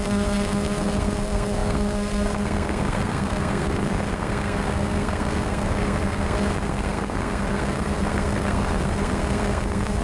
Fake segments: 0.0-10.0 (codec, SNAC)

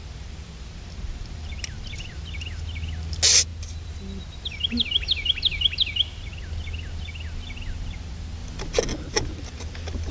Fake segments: none

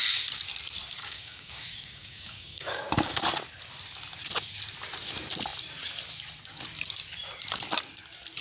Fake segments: 1.0-3.2 (codec, DAC)

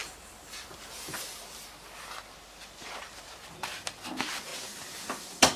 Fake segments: 0.0-1.4 (vocoder, BigVGAN v2)

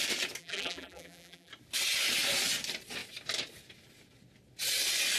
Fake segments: 0.4-1.5 (vocoder, BigVGAN v2)

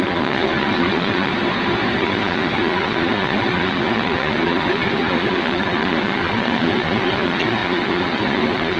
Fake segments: 0.0-1.3 (vocoder, Vocos); 2.0-8.8

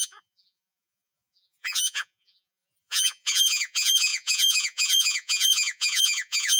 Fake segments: 0.0-6.6 (vocoder, Vocos)